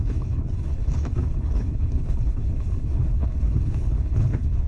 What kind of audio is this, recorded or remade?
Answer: remade